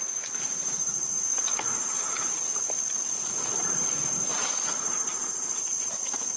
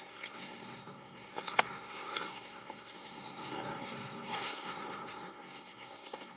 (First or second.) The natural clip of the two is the first